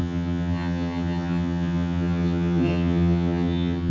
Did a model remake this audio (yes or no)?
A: yes